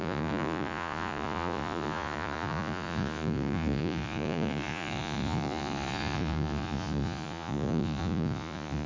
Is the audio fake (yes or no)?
yes